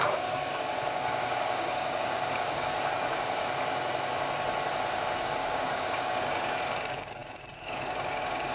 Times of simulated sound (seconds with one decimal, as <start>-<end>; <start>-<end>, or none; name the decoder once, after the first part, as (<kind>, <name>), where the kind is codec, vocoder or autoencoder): 0.0-3.4 (codec, DAC); 5.3-8.5